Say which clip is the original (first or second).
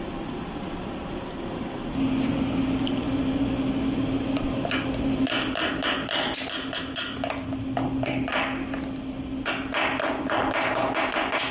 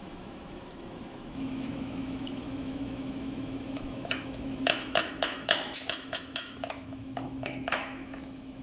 first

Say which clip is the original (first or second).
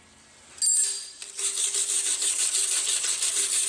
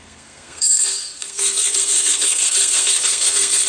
first